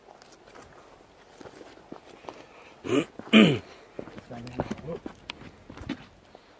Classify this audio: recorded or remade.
recorded